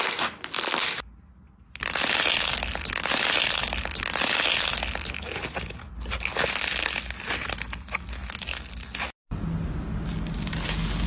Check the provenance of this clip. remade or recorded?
recorded